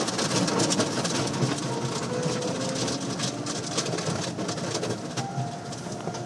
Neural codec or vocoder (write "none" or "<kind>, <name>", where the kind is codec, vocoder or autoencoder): none